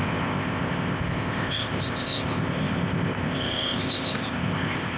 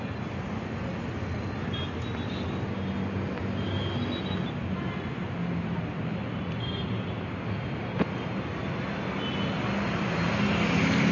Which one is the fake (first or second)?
first